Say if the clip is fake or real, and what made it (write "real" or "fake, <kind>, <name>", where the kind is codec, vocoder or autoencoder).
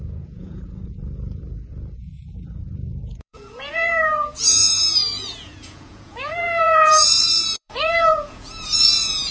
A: fake, vocoder, Vocos